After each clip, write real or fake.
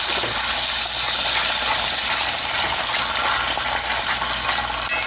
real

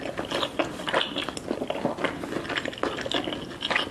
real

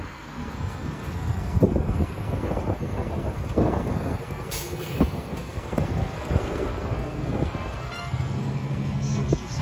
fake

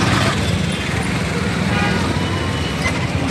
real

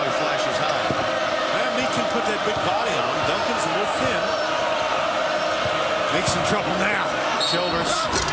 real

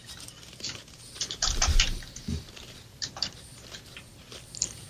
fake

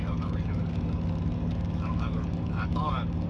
fake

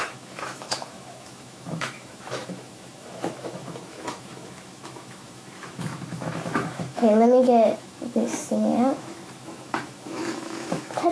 fake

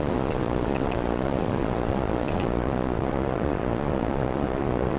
fake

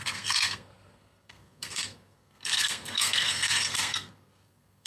fake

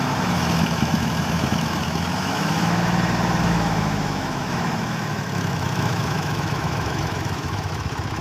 fake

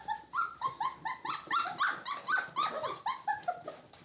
real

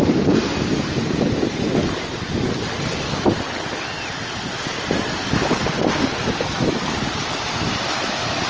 real